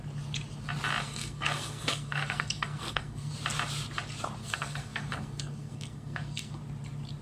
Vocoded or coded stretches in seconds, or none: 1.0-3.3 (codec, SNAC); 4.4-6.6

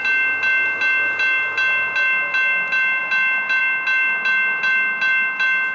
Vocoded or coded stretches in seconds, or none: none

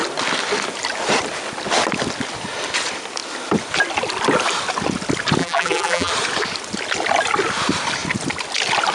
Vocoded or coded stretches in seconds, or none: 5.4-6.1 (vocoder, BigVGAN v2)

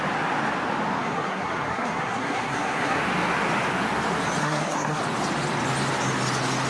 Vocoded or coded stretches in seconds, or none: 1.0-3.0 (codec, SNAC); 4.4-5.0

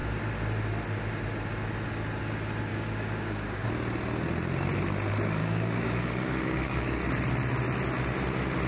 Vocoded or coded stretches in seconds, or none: 2.7-3.7 (codec, DAC); 5.4-7.0

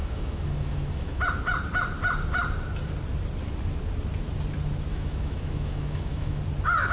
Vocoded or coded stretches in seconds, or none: 0.0-1.2 (autoencoder, DAC-VAE); 4.9-6.4

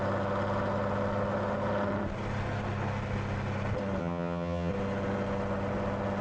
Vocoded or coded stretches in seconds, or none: 4.0-4.7 (vocoder, HiFi-GAN)